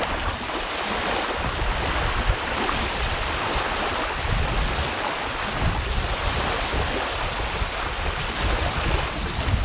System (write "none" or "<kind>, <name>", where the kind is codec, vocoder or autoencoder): none